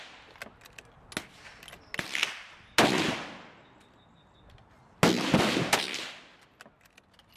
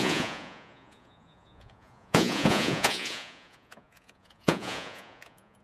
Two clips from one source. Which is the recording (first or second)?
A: first